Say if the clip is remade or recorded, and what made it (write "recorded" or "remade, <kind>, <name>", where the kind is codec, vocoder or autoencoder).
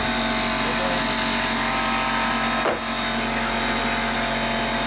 recorded